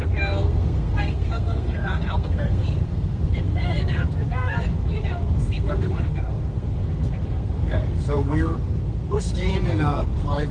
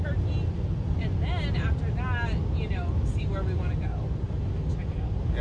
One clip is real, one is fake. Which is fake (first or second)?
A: first